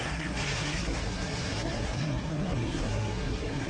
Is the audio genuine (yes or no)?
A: no